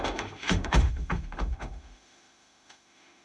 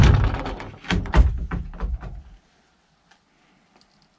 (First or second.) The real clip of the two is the second